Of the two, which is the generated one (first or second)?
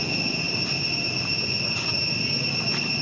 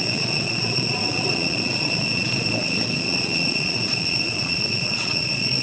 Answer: second